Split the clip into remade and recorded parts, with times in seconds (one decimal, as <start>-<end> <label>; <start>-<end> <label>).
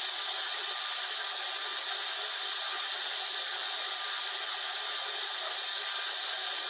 0.0-6.7 recorded